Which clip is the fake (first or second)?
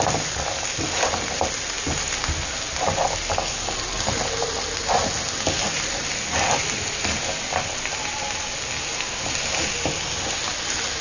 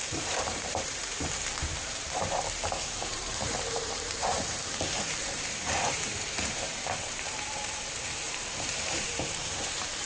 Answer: second